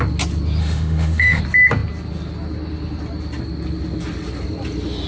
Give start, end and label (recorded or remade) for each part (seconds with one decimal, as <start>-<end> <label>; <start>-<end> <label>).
0.0-0.6 recorded; 0.6-1.4 remade; 1.4-5.1 recorded